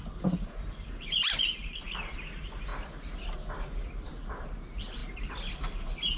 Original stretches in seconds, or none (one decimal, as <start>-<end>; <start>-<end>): 0.0-6.2